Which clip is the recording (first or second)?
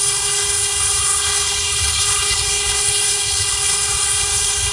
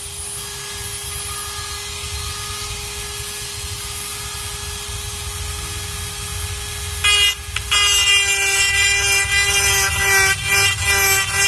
second